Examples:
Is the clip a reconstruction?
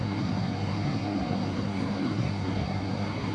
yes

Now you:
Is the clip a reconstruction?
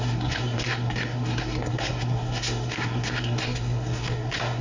yes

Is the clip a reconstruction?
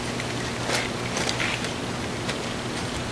no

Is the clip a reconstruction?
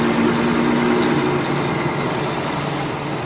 no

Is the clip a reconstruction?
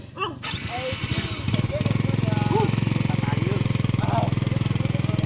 no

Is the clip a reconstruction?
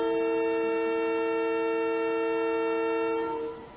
no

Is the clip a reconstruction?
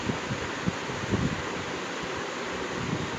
no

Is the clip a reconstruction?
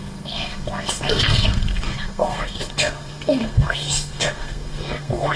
yes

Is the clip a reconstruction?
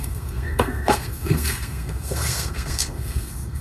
yes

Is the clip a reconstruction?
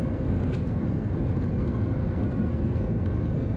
yes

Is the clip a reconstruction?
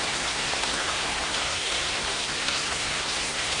yes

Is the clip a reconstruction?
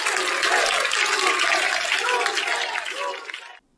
no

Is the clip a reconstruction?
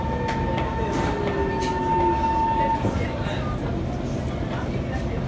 no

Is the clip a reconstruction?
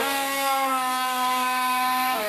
yes